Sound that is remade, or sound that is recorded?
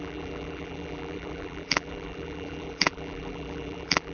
remade